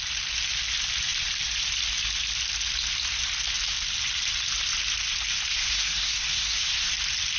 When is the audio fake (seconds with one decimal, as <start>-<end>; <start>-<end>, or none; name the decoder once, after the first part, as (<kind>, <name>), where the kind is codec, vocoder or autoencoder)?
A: 5.5-6.9 (codec, SNAC)